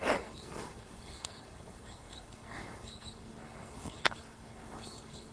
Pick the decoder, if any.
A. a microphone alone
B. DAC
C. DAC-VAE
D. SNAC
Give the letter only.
D